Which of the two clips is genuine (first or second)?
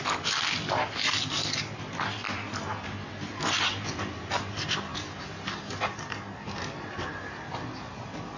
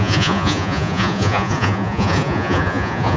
first